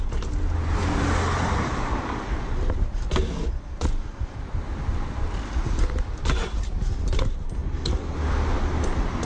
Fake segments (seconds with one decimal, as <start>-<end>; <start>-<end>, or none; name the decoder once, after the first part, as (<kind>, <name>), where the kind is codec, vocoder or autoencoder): none

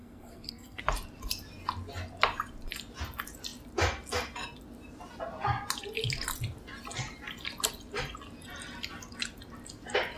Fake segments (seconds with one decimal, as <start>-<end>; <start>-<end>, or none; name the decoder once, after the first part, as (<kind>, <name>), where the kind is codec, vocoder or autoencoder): 0.0-0.8 (codec, SNAC)

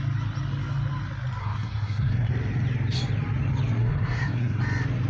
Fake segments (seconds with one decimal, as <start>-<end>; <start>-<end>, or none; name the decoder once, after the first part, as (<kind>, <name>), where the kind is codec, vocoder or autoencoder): 1.4-2.3 (codec, SNAC); 3.8-4.6

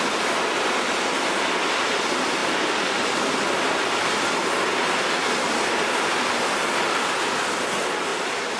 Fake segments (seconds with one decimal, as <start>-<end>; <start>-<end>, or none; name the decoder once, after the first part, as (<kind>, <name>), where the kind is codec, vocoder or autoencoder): 8.1-8.6 (vocoder, BigVGAN v2)

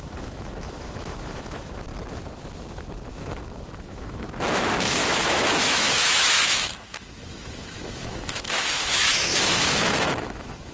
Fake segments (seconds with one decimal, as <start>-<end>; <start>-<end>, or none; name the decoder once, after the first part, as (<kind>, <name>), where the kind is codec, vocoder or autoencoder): 0.0-1.9 (autoencoder, DAC-VAE); 3.1-10.7

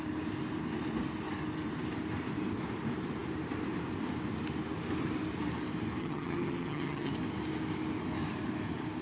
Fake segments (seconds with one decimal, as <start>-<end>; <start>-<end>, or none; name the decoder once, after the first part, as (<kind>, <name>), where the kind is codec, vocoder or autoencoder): 6.0-7.1 (vocoder, HiFi-GAN)

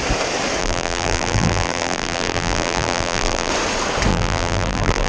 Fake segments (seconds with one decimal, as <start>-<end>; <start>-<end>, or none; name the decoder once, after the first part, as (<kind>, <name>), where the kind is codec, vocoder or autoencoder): 0.6-3.5 (vocoder, BigVGAN v2); 4.1-5.1